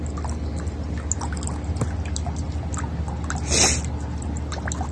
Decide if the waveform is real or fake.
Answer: real